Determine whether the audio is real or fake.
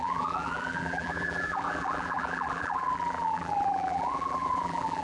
fake